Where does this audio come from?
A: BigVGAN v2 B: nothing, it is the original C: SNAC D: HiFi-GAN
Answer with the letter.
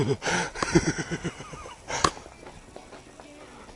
B